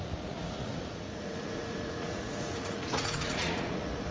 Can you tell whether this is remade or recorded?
remade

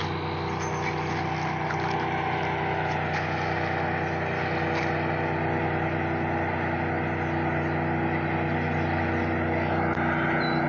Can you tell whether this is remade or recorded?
recorded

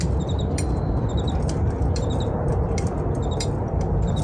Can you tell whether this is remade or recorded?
remade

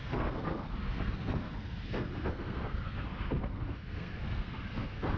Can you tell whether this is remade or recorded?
remade